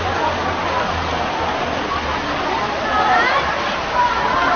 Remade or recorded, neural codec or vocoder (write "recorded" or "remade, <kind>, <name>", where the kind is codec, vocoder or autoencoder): recorded